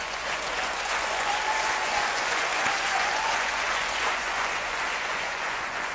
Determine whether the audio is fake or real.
fake